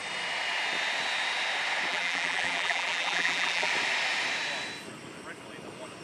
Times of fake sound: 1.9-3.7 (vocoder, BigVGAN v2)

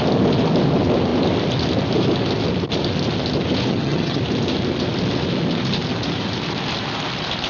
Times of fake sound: 3.7-4.2 (vocoder, HiFi-GAN)

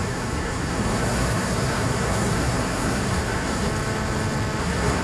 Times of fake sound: 0.0-3.7 (codec, SNAC); 4.6-5.0

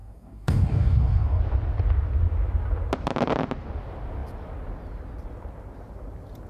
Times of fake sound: 0.0-1.4 (codec, DAC)